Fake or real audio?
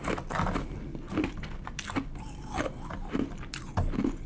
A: real